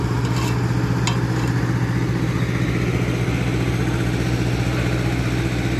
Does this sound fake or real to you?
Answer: real